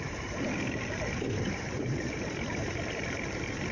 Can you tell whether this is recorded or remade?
remade